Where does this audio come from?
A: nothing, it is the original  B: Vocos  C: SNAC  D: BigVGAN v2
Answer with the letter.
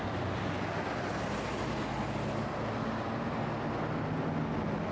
A